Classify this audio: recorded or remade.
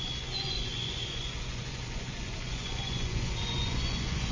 remade